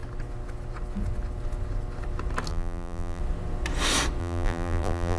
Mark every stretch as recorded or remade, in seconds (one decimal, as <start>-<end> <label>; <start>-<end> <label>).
0.0-2.5 recorded; 2.5-3.2 remade; 3.2-4.2 recorded; 4.2-5.2 remade